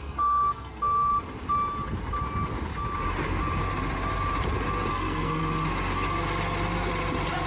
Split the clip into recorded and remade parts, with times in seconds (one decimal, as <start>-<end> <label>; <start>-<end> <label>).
0.0-1.1 remade; 1.1-4.9 recorded; 4.9-5.4 remade; 5.4-7.5 recorded